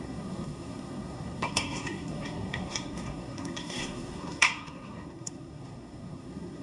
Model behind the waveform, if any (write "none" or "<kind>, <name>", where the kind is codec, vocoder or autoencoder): codec, SNAC